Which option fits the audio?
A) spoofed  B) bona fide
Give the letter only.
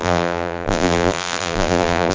A